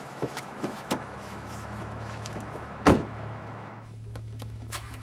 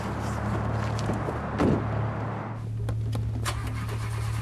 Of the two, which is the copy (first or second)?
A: first